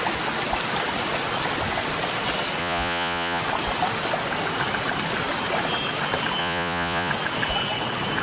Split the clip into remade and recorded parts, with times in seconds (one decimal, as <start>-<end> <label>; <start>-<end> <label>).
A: 0.0-2.6 recorded; 2.6-3.4 remade; 3.4-6.4 recorded; 6.4-7.1 remade; 7.1-8.2 recorded